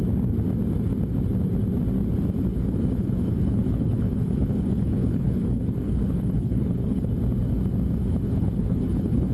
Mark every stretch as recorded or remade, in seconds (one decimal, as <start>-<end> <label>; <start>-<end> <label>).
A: 0.0-2.5 recorded; 2.5-7.1 remade; 7.1-8.0 recorded; 8.0-9.3 remade